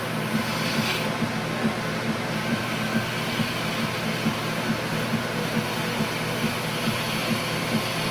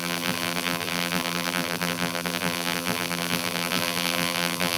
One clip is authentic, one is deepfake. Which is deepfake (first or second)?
second